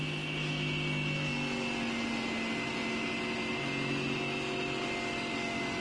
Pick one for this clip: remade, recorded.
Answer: recorded